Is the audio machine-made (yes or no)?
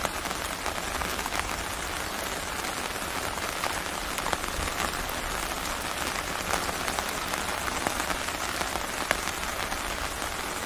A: no